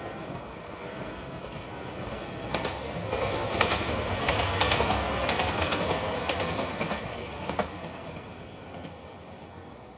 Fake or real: fake